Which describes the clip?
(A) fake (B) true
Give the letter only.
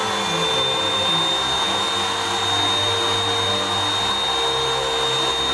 B